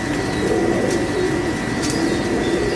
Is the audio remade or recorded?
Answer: recorded